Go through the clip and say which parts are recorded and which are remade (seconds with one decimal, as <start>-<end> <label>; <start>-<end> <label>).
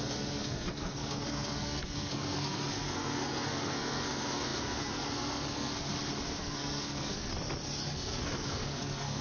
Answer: 0.0-5.9 remade; 5.9-6.4 recorded; 6.4-7.3 remade; 7.3-7.9 recorded; 7.9-9.2 remade